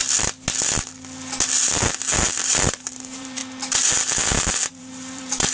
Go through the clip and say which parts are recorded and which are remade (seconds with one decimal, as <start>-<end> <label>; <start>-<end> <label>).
0.0-2.4 recorded; 2.4-3.4 remade; 3.4-4.7 recorded; 4.7-5.5 remade